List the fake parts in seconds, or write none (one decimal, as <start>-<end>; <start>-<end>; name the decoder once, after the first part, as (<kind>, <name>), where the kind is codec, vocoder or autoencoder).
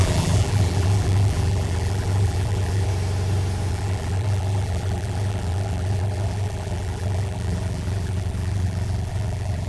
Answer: 0.0-2.9 (vocoder, BigVGAN v2); 3.7-9.7